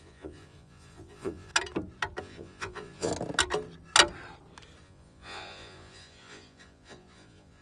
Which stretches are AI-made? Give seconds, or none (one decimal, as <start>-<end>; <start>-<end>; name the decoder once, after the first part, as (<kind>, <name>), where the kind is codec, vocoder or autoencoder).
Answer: 0.0-1.5 (vocoder, Vocos); 2.2-3.1; 4.8-7.6